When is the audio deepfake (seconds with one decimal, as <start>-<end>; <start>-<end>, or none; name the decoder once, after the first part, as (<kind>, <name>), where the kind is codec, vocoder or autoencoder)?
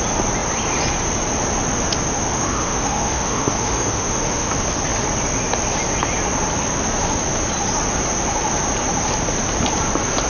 2.3-4.5 (autoencoder, DAC-VAE)